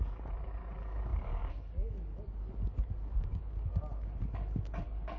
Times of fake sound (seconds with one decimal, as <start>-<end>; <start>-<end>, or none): 0.0-5.2